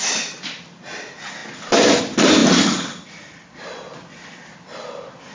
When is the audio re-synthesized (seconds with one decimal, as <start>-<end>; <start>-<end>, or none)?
none